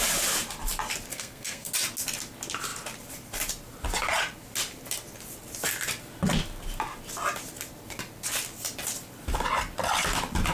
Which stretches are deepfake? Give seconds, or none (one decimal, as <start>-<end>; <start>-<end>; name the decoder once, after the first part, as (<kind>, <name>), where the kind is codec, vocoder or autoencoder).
1.1-1.7 (codec, SNAC)